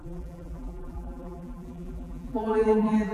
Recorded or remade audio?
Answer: remade